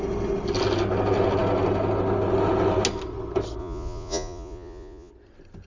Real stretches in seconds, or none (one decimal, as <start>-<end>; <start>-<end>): 0.0-3.6; 5.1-5.7